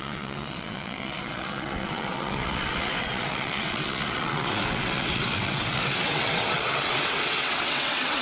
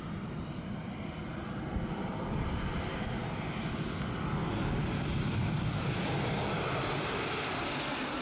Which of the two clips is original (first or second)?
second